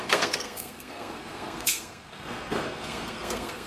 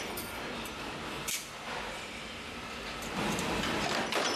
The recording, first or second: second